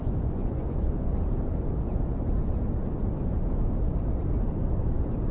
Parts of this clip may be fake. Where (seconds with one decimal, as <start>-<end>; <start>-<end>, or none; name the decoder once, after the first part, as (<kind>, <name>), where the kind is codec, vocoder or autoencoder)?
0.0-1.1 (vocoder, Vocos)